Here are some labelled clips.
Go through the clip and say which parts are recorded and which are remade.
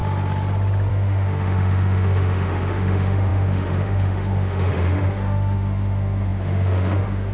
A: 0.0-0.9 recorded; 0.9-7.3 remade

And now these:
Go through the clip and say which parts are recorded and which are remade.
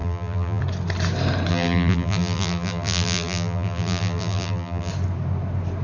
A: 0.0-0.6 remade; 0.6-1.5 recorded; 1.5-4.9 remade; 4.9-5.8 recorded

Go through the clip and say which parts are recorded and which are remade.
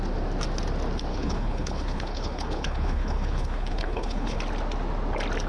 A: 0.0-1.1 recorded; 1.1-4.4 remade; 4.4-5.5 recorded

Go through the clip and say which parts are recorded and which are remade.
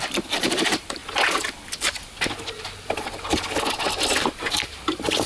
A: 0.0-1.0 remade; 1.0-4.2 recorded; 4.2-5.3 remade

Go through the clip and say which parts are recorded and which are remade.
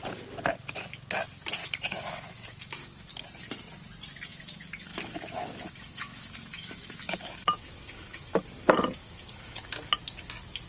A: 0.0-1.6 recorded; 1.6-3.1 remade; 3.1-4.3 recorded; 4.3-8.5 remade; 8.5-9.0 recorded; 9.0-9.7 remade; 9.7-10.7 recorded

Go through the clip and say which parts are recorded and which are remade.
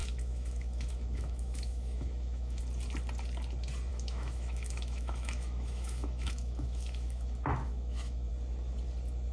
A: 0.0-2.6 remade; 2.6-3.9 recorded; 3.9-8.3 remade; 8.3-9.3 recorded